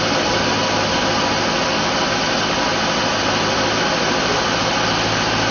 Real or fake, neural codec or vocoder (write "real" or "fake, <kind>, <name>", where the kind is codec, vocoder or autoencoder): real